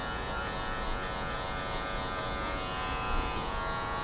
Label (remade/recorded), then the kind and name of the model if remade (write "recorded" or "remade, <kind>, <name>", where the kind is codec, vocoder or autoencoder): remade, vocoder, Vocos